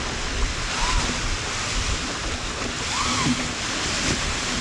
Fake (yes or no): no